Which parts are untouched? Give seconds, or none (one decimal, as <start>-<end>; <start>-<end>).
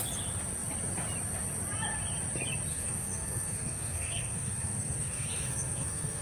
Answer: 0.0-2.7